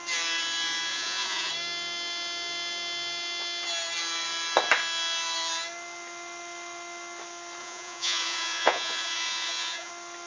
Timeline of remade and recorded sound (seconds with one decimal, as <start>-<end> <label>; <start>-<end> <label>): 0.0-0.9 recorded; 0.9-1.5 remade; 1.5-7.6 recorded; 7.6-9.9 remade; 9.9-10.3 recorded